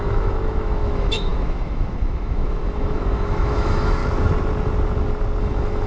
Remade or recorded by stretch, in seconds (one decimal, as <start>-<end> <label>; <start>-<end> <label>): 0.0-4.0 remade; 4.0-5.4 recorded; 5.4-5.9 remade